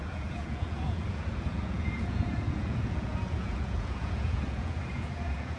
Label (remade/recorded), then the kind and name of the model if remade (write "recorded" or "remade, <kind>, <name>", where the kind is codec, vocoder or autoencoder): remade, vocoder, Vocos